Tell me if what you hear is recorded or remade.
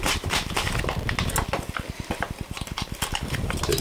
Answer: recorded